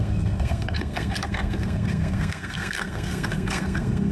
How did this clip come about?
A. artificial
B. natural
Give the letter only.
A